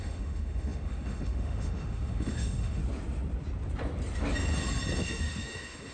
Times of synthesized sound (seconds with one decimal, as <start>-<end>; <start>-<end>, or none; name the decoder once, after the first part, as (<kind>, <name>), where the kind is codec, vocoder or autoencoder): 0.0-2.8 (autoencoder, DAC-VAE); 5.0-5.9